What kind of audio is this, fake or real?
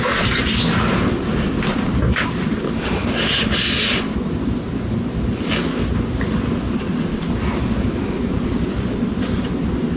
real